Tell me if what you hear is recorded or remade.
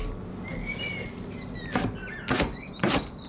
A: recorded